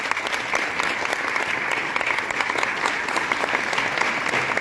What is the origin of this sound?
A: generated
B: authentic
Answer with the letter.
B